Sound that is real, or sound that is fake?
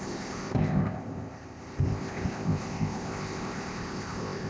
fake